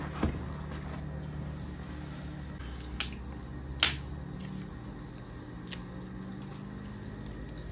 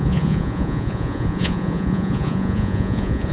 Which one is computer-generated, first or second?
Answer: second